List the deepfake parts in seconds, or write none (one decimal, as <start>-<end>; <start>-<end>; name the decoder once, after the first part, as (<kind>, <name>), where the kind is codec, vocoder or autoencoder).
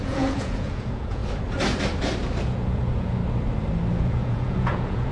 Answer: 0.0-1.2 (vocoder, Vocos); 2.4-3.2; 3.9-5.1